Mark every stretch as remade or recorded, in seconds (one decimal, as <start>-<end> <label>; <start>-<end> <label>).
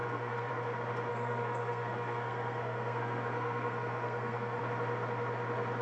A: 0.0-0.5 remade; 0.5-1.1 recorded; 1.1-4.6 remade; 4.6-5.8 recorded